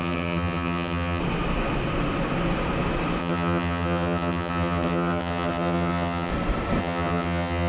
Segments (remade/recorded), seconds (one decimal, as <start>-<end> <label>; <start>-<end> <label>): 0.0-1.2 remade; 1.2-3.2 recorded; 3.2-6.3 remade; 6.3-6.8 recorded; 6.8-7.7 remade